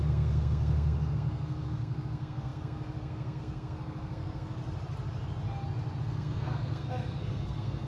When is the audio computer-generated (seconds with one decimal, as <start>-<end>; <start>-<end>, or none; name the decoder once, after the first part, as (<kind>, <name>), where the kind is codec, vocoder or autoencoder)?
0.0-4.6 (codec, SNAC); 6.0-7.9